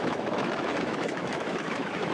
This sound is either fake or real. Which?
fake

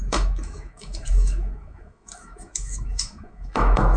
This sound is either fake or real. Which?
fake